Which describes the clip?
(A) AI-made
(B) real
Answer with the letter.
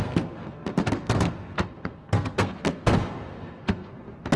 A